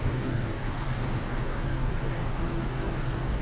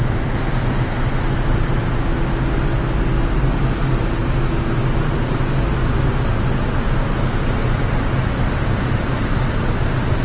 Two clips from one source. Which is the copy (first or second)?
first